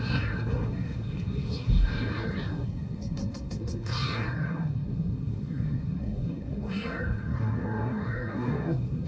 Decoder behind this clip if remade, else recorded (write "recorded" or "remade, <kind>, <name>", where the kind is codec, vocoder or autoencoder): remade, codec, SNAC